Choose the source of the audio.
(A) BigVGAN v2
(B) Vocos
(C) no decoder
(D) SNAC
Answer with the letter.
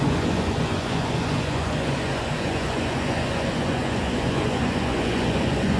B